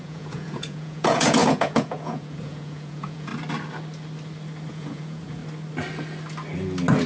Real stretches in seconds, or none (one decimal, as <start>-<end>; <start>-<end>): 3.3-4.7; 5.4-7.1